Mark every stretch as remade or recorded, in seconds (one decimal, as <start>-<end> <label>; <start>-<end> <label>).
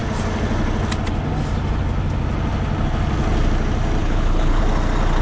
0.0-4.0 recorded; 4.0-4.6 remade; 4.6-5.2 recorded